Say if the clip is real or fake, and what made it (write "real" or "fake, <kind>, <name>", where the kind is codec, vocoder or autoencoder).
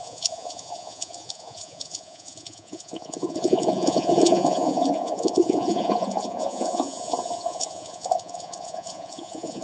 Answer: fake, vocoder, Vocos